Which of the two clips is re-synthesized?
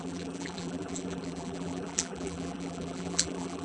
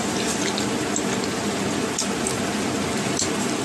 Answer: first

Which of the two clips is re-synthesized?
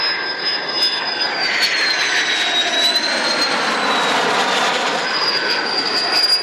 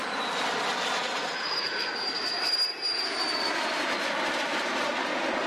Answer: second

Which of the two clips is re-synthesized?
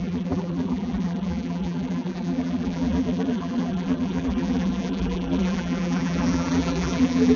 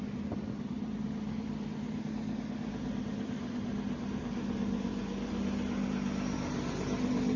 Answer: first